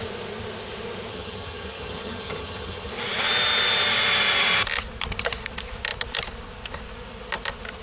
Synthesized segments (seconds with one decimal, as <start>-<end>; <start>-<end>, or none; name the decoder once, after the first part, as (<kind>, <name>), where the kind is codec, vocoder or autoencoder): 1.1-2.9 (vocoder, HiFi-GAN)